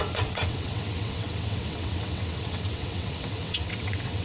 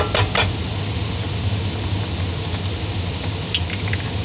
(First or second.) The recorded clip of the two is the second